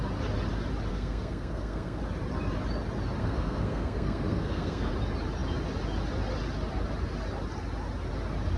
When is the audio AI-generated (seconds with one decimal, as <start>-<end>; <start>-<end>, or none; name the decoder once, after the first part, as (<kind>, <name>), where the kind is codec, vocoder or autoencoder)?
0.9-2.0 (codec, SNAC); 3.2-4.9